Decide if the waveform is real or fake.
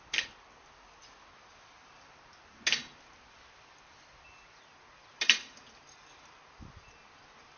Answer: real